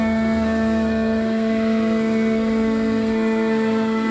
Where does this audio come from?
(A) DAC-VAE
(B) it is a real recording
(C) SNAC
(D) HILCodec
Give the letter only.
C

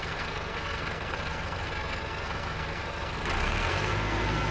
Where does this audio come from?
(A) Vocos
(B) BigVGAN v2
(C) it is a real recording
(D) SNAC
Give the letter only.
D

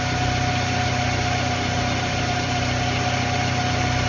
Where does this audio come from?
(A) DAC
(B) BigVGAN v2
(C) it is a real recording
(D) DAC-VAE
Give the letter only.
C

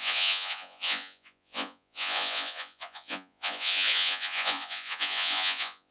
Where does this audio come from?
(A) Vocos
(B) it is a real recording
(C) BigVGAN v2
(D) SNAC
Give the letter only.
A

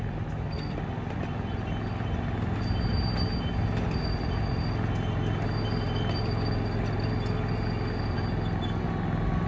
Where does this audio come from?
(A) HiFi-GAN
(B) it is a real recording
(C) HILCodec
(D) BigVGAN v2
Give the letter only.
B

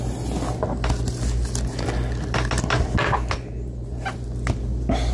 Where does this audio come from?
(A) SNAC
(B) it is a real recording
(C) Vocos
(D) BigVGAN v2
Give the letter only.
B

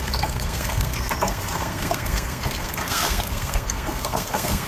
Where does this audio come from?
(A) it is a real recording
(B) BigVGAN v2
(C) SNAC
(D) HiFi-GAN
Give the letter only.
C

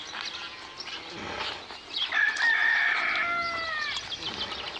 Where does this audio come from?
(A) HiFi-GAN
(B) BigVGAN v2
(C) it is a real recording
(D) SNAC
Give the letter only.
C